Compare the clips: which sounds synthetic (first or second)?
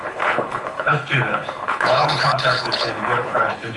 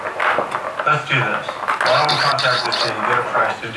first